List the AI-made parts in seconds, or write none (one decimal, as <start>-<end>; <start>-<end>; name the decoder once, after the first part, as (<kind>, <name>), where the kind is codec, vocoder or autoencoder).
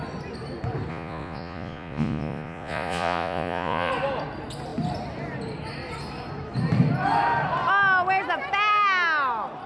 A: 0.9-3.9 (vocoder, Vocos)